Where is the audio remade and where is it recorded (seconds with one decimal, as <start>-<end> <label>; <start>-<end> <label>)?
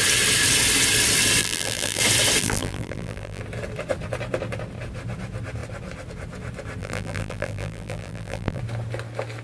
0.0-1.4 recorded; 1.4-2.0 remade; 2.0-2.4 recorded; 2.4-3.4 remade; 3.4-6.8 recorded; 6.8-8.6 remade; 8.6-9.4 recorded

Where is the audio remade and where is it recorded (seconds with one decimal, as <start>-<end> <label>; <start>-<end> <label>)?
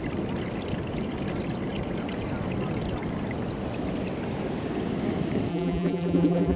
0.0-5.5 recorded; 5.5-6.6 remade